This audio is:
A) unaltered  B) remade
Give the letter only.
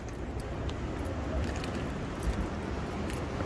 A